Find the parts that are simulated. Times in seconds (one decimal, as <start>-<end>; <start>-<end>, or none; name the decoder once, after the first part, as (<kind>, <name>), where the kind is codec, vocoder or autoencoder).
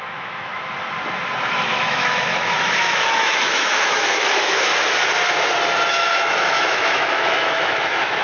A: 0.0-0.5 (autoencoder, DAC-VAE); 1.4-4.7; 5.9-8.2